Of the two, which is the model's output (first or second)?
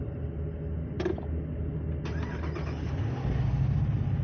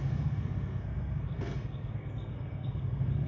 second